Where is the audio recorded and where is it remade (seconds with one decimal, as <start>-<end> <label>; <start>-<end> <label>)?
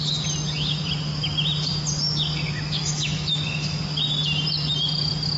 0.0-2.8 recorded; 2.8-3.8 remade; 3.8-5.4 recorded